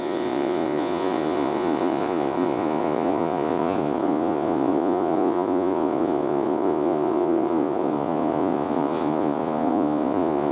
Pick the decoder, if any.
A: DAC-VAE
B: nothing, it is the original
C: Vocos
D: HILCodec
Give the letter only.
C